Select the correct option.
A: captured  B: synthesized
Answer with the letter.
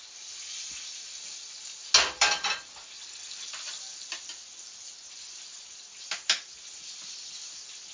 A